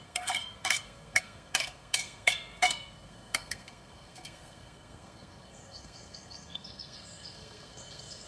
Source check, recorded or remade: remade